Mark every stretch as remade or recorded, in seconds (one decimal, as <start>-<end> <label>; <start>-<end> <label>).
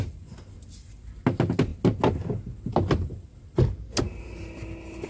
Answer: 0.0-5.1 recorded